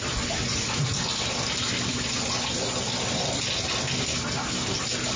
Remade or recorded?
recorded